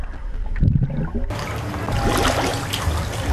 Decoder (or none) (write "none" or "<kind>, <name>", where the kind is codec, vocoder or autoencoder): none